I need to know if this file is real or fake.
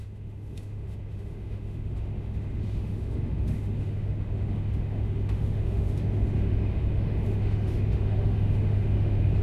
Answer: fake